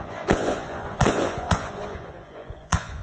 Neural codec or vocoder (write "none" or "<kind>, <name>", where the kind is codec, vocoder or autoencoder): vocoder, Vocos